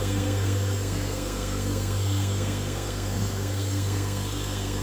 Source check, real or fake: fake